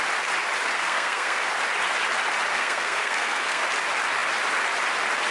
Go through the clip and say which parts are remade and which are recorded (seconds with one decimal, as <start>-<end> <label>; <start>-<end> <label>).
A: 0.0-0.7 recorded; 0.7-1.4 remade; 1.4-2.5 recorded; 2.5-3.6 remade; 3.6-5.3 recorded